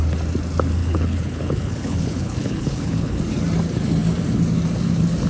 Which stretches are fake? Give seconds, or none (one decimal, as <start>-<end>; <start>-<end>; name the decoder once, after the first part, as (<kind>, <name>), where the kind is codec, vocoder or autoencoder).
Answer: 0.8-3.2 (codec, HILCodec)